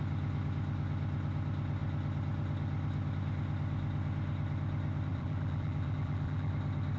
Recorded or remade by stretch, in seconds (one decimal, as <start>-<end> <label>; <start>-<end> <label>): 0.0-5.1 recorded; 5.1-6.5 remade; 6.5-7.0 recorded

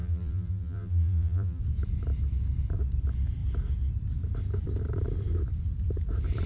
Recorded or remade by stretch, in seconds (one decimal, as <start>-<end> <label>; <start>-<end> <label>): 0.0-1.6 remade; 1.6-6.5 recorded